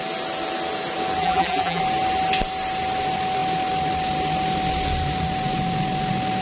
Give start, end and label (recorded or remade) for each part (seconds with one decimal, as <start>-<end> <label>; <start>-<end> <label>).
0.0-1.2 recorded; 1.2-1.8 remade; 1.8-6.4 recorded